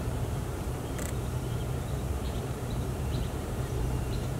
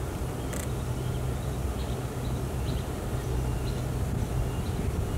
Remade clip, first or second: first